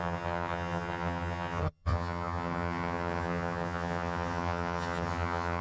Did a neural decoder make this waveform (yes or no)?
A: yes